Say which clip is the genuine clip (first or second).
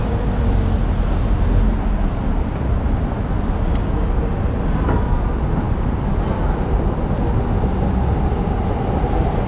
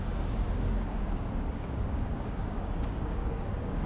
first